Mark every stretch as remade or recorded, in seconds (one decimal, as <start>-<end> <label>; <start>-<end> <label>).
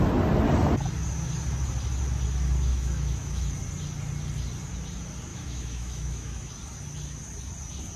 0.0-2.7 recorded; 2.7-3.5 remade; 3.5-5.3 recorded; 5.3-6.5 remade; 6.5-8.0 recorded